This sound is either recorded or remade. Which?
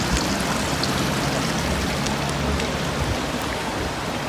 recorded